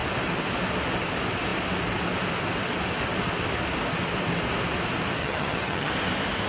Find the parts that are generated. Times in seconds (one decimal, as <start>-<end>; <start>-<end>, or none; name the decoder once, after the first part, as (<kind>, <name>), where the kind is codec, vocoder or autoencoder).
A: 5.2-5.9 (vocoder, HiFi-GAN)